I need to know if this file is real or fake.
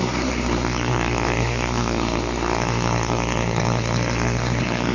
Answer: fake